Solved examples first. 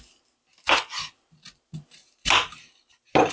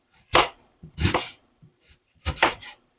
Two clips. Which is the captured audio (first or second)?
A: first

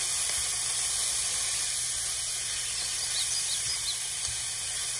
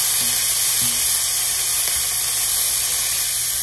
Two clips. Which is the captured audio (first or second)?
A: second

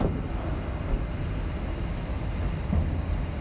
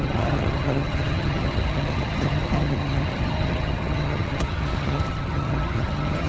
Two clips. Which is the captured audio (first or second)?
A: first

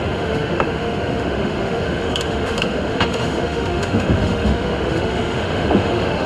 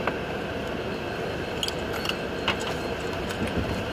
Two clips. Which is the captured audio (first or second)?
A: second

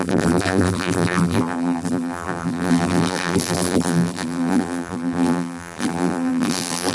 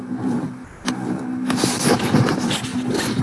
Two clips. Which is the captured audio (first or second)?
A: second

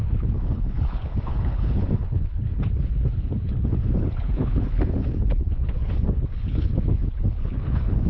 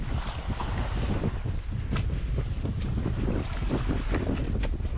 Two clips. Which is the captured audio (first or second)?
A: second